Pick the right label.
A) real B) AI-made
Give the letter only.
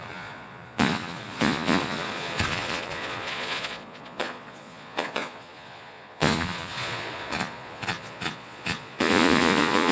B